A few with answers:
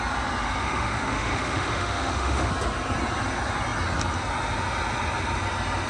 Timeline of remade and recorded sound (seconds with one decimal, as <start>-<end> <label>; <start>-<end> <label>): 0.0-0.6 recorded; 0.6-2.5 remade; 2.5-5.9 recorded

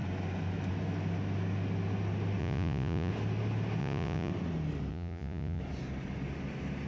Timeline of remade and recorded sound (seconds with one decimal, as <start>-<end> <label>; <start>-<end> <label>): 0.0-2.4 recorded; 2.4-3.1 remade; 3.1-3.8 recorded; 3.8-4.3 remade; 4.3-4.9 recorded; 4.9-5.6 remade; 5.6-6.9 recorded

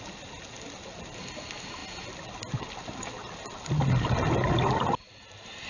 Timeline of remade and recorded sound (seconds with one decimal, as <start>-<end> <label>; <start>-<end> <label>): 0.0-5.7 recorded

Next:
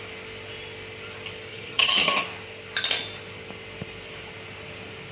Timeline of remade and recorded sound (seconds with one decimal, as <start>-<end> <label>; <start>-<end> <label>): 0.0-1.5 recorded; 1.5-2.2 remade; 2.2-5.1 recorded